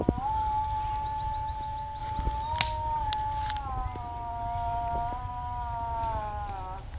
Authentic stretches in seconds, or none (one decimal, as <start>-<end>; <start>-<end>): 0.0-7.0